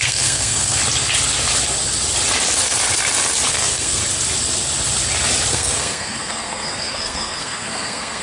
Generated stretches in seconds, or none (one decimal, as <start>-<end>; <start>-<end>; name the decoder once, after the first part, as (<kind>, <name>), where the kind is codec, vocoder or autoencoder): 0.0-0.8 (codec, SNAC); 3.5-4.0; 5.5-8.2